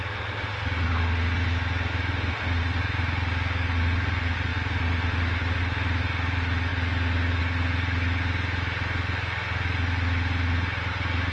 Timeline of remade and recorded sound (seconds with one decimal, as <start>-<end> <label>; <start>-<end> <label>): 0.0-11.3 recorded